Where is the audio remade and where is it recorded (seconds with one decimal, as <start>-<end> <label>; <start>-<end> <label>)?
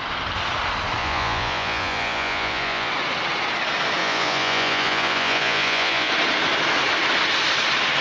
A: 0.0-1.0 recorded; 1.0-2.9 remade; 2.9-4.0 recorded; 4.0-6.1 remade; 6.1-8.0 recorded